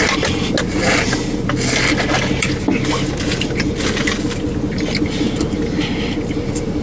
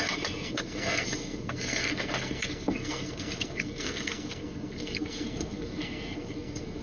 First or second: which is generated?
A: second